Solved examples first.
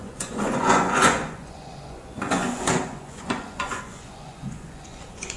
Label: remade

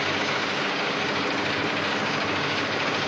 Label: remade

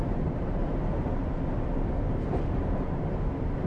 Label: recorded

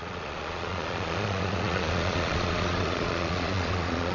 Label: remade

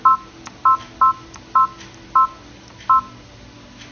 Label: recorded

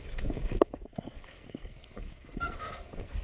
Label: remade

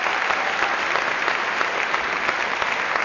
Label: recorded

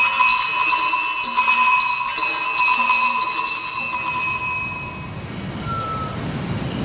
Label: recorded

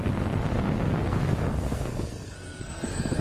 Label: remade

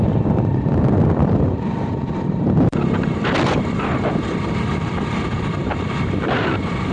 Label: remade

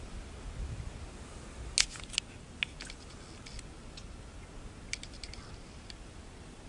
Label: recorded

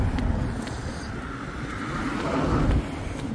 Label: recorded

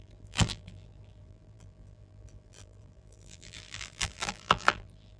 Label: remade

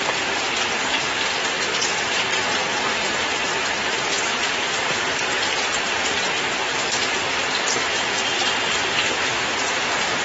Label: remade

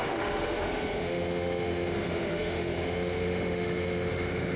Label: remade